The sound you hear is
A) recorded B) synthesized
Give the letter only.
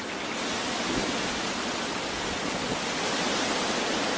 A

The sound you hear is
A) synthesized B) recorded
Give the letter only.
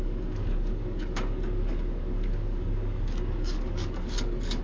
A